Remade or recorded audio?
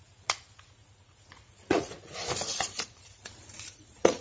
remade